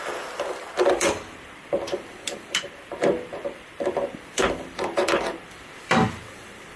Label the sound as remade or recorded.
remade